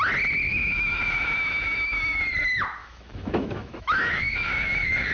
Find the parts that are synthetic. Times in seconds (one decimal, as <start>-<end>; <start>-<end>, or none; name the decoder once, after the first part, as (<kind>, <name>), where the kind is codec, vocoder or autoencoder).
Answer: 0.5-2.3 (autoencoder, DAC-VAE); 2.8-5.1